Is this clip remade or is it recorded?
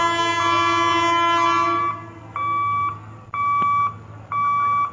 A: recorded